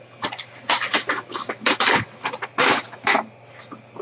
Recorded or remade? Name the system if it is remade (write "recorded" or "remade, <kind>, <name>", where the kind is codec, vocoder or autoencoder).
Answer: recorded